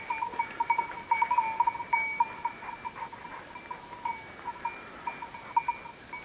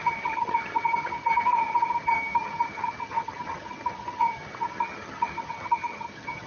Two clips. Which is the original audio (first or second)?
first